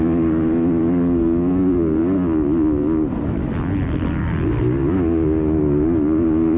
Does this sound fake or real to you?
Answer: real